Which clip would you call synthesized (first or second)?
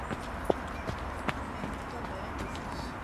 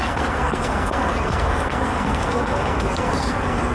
second